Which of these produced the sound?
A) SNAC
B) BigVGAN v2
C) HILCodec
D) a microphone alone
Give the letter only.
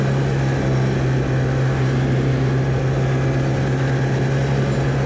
D